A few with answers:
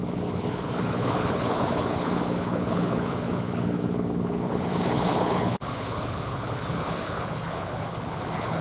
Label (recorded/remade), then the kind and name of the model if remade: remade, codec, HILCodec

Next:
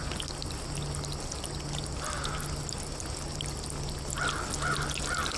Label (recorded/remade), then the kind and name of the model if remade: recorded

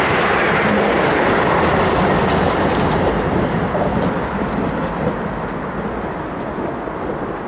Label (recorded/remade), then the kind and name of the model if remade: recorded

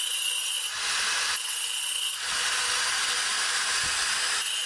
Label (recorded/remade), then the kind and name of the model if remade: recorded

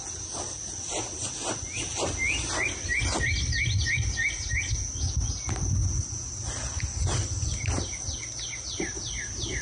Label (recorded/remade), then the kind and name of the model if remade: recorded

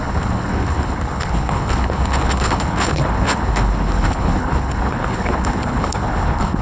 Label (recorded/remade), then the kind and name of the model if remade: remade, codec, HILCodec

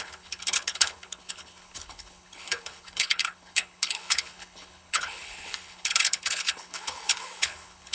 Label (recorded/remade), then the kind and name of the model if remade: remade, codec, HILCodec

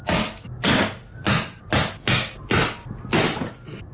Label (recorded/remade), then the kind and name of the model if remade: recorded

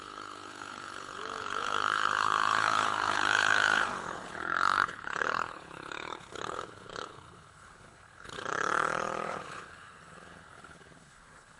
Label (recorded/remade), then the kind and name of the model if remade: remade, codec, HILCodec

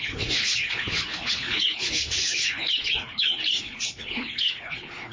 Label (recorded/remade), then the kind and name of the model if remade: remade, codec, HILCodec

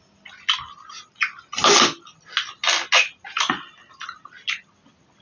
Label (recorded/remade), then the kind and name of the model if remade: recorded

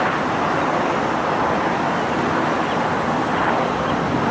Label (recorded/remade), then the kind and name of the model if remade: recorded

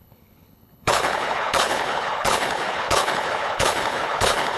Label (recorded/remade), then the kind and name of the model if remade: remade, codec, HILCodec